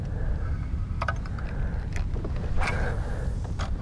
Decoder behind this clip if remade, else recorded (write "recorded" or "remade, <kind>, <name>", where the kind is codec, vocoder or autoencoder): recorded